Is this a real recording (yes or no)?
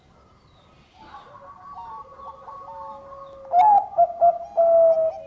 yes